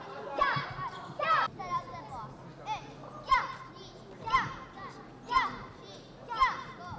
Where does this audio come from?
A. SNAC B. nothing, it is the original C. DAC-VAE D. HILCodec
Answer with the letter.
B